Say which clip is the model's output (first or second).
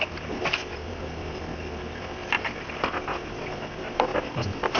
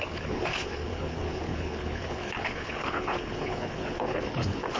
second